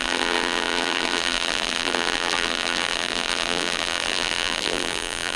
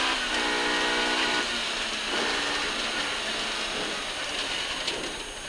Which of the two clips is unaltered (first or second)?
second